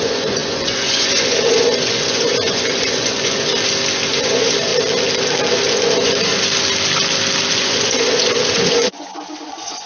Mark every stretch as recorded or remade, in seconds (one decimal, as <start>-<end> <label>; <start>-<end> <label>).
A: 0.0-3.5 remade; 3.5-4.1 recorded; 4.1-4.7 remade; 4.7-5.5 recorded; 5.5-6.3 remade; 6.3-7.5 recorded; 7.5-9.9 remade